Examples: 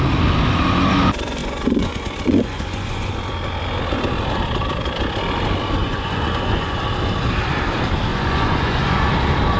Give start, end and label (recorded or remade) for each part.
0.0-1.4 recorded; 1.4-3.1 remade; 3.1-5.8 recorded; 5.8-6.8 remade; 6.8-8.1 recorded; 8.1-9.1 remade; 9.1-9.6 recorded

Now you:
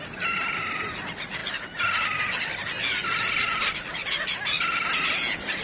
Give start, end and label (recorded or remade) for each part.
0.0-5.6 recorded

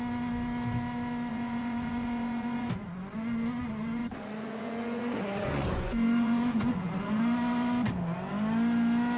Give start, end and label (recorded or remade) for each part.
0.0-1.3 recorded; 1.3-2.7 remade; 2.7-4.0 recorded; 4.0-7.2 remade; 7.2-9.2 recorded

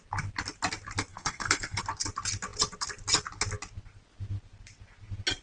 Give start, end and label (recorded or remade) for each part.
0.0-1.1 recorded; 1.1-1.8 remade; 1.8-5.4 recorded

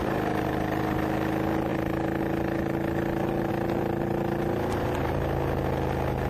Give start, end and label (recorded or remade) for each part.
0.0-6.3 recorded

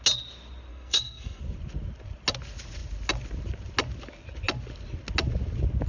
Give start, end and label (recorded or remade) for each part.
0.0-0.7 recorded; 0.7-1.4 remade; 1.4-5.9 recorded

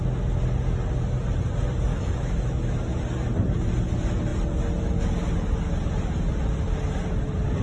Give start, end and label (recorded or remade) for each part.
0.0-1.9 recorded; 1.9-2.7 remade; 2.7-7.6 recorded

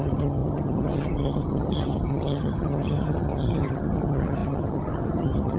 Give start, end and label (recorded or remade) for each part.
0.0-5.6 remade